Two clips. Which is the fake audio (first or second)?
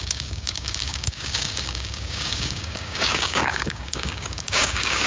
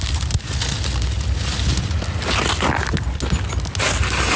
first